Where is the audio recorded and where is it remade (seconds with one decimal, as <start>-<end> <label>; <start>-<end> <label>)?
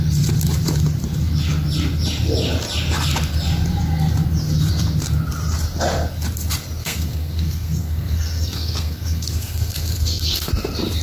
0.0-6.8 recorded; 6.8-10.5 remade; 10.5-11.0 recorded